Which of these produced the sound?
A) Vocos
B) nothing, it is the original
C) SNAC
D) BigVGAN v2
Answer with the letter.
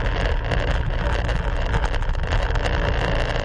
B